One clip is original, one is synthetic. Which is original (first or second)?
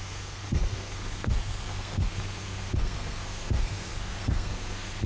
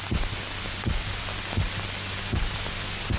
second